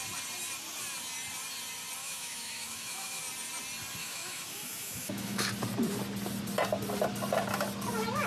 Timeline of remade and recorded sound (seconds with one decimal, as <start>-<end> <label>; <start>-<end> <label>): 0.0-2.0 recorded; 2.0-3.2 remade; 3.2-4.0 recorded; 4.0-5.5 remade; 5.5-8.3 recorded